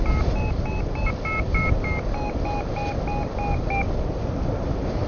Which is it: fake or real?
real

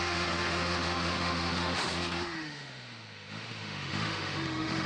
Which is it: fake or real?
fake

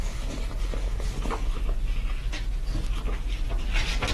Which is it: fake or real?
real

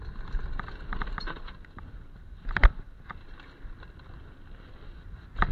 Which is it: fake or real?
real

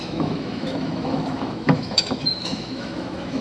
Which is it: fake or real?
fake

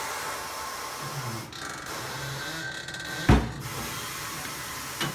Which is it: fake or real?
real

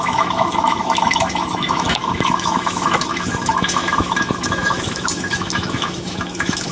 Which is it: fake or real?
fake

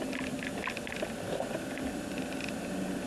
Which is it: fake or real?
real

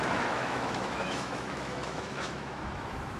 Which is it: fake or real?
fake